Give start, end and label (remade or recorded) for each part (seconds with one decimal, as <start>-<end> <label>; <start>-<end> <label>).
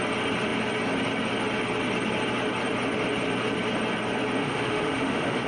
0.0-4.4 recorded; 4.4-5.5 remade